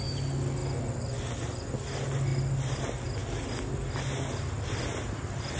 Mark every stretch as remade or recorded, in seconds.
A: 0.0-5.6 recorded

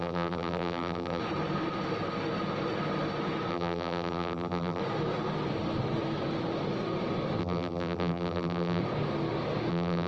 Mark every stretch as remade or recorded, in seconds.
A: 0.0-1.2 remade; 1.2-3.5 recorded; 3.5-4.8 remade; 4.8-7.4 recorded; 7.4-8.8 remade; 8.8-9.7 recorded; 9.7-10.1 remade

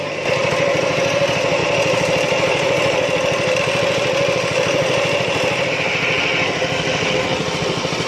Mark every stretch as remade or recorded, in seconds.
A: 0.0-1.6 recorded; 1.6-3.6 remade; 3.6-8.1 recorded

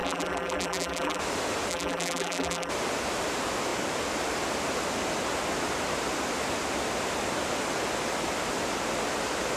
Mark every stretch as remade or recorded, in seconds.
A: 0.0-1.2 remade; 1.2-1.7 recorded; 1.7-2.7 remade; 2.7-9.6 recorded

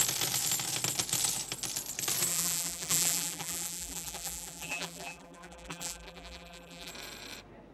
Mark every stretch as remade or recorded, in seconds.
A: 0.0-2.3 recorded; 2.3-6.9 remade; 6.9-7.7 recorded

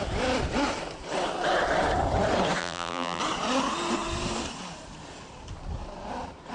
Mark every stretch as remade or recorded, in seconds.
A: 0.0-2.6 recorded; 2.6-3.2 remade; 3.2-6.5 recorded

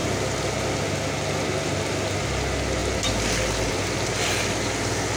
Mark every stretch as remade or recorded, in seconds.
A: 0.0-5.2 recorded